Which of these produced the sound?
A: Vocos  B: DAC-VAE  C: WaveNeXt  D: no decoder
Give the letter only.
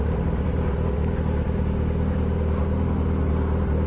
D